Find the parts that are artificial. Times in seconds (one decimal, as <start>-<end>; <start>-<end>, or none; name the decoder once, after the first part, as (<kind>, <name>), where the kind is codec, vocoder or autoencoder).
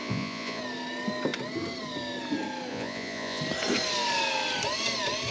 0.0-0.6 (vocoder, Vocos); 2.7-3.4